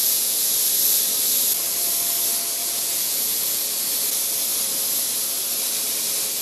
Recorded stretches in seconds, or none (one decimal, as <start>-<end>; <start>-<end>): 0.5-2.6; 3.8-6.4